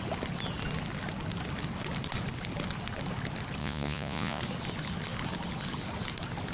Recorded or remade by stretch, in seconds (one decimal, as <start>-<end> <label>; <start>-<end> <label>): 0.0-3.6 recorded; 3.6-4.4 remade; 4.4-6.5 recorded

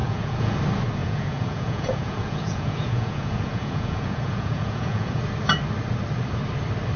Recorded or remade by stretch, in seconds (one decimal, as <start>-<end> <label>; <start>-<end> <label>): 0.0-0.6 remade; 0.6-1.0 recorded; 1.0-5.2 remade; 5.2-7.0 recorded

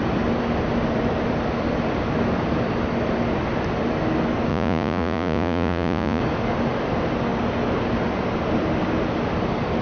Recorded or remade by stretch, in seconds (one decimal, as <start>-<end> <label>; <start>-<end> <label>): 0.0-4.5 recorded; 4.5-6.2 remade; 6.2-9.8 recorded

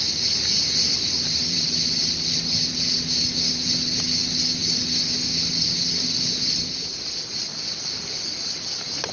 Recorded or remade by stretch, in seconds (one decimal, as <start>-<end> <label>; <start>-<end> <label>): 0.0-2.7 remade; 2.7-7.5 recorded; 7.5-8.1 remade; 8.1-9.1 recorded

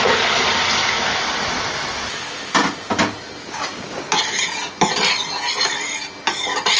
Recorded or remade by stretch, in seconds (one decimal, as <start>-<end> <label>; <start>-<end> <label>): 0.0-3.4 recorded; 3.4-4.1 remade; 4.1-6.8 recorded

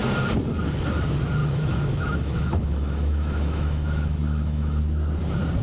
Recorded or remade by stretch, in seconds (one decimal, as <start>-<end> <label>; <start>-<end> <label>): 0.0-1.4 recorded; 1.4-4.8 remade; 4.8-5.6 recorded

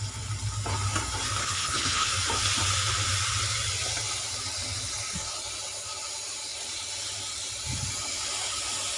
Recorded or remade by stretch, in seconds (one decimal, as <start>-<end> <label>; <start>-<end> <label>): 0.0-1.4 recorded; 1.4-2.1 remade; 2.1-9.0 recorded